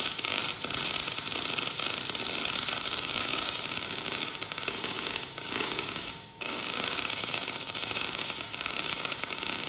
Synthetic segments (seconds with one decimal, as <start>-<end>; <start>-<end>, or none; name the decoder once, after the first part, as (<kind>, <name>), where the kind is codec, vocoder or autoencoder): 0.0-0.4 (codec, DAC); 2.8-9.7